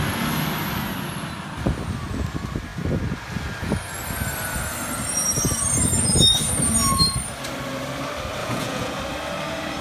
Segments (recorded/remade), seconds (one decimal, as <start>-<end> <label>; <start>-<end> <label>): 0.0-8.4 recorded; 8.4-9.0 remade; 9.0-9.8 recorded